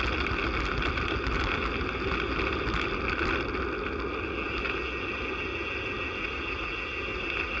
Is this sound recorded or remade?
recorded